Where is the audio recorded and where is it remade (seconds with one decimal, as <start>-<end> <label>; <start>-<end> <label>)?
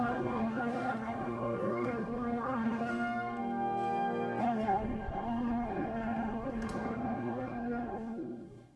0.0-2.9 remade; 2.9-4.4 recorded; 4.4-8.8 remade